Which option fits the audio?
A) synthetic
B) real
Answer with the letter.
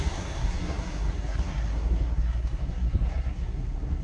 A